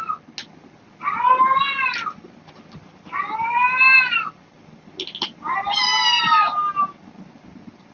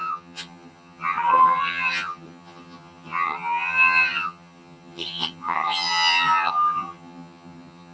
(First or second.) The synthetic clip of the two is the second